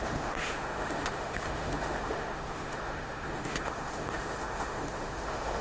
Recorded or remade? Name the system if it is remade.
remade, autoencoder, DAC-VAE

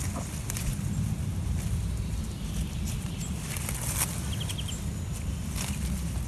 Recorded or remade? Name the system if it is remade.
recorded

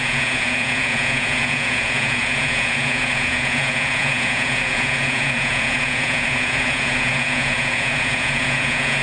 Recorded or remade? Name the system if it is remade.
remade, vocoder, Vocos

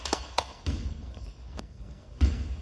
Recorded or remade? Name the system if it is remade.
remade, codec, SNAC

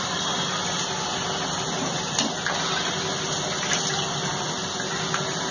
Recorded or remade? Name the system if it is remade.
recorded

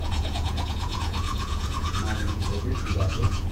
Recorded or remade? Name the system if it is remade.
remade, vocoder, Vocos